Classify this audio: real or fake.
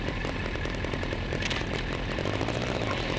real